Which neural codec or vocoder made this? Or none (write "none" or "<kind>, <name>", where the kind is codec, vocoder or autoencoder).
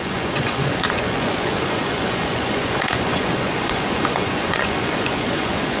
vocoder, Vocos